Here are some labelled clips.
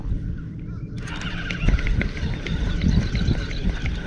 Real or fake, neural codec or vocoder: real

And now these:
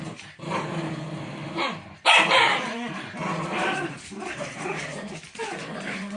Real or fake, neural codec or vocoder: fake, vocoder, BigVGAN v2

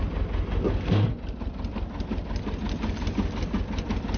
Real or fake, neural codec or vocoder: real